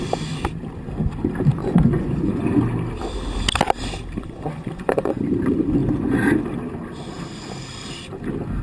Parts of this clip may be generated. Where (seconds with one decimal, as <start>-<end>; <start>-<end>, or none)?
1.6-2.4; 4.2-5.2